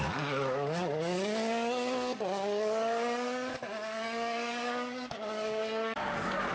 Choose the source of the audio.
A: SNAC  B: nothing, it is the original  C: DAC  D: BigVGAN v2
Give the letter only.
C